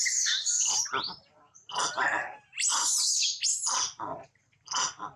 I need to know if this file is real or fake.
real